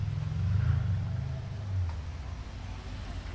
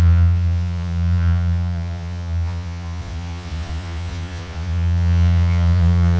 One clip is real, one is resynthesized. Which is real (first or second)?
first